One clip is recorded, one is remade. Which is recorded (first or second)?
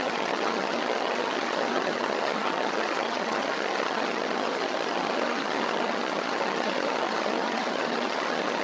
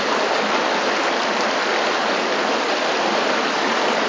second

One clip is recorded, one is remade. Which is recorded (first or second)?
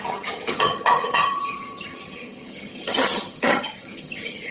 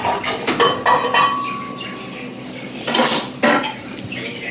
second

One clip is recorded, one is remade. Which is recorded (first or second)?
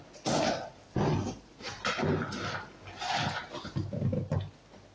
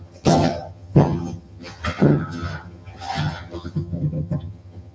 first